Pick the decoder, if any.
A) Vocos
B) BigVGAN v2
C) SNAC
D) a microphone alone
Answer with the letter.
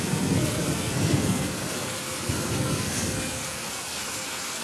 C